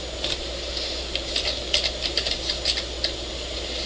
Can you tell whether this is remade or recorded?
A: recorded